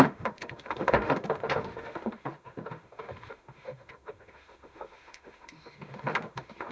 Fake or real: fake